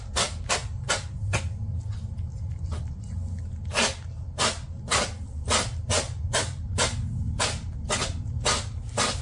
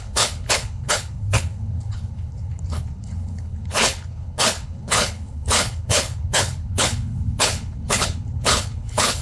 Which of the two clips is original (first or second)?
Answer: first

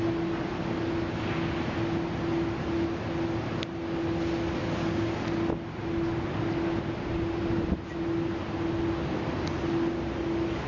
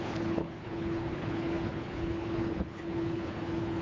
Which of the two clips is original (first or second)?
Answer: first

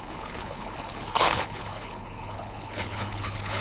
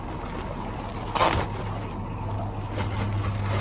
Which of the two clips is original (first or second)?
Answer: second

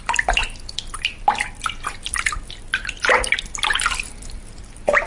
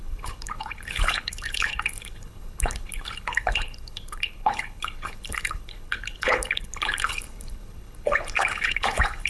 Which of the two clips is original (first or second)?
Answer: first